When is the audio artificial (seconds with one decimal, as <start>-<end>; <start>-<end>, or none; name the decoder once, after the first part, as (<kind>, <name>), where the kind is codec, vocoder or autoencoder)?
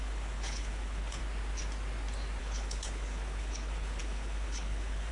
0.0-1.2 (codec, HILCodec); 2.4-5.1